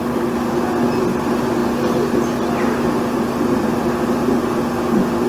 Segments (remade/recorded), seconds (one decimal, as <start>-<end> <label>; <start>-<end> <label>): 0.0-5.3 recorded